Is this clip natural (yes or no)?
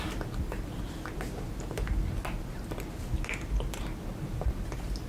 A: yes